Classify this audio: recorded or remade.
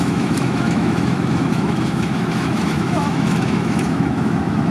remade